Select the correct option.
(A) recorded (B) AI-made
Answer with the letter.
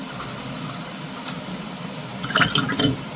B